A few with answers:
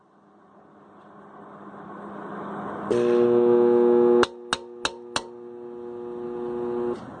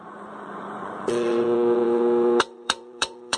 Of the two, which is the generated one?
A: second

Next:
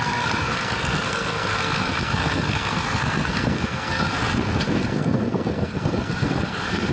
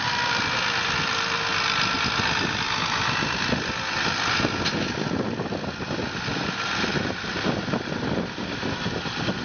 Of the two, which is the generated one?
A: first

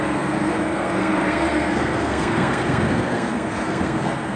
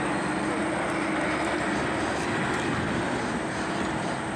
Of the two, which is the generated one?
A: first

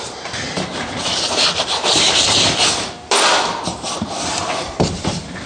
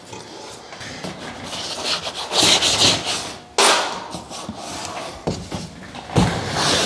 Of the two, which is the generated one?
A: first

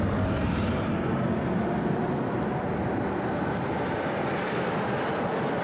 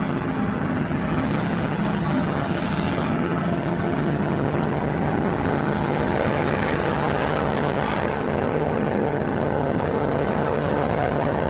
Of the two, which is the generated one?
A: second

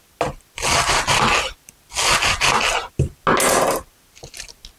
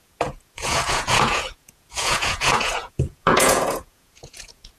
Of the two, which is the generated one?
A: second